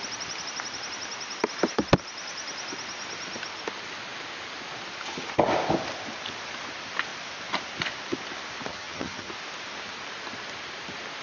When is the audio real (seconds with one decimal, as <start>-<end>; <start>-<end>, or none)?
0.0-8.7; 9.3-11.2